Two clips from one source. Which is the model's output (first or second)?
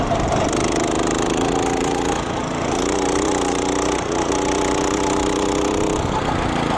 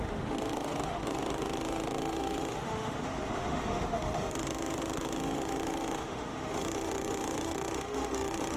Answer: second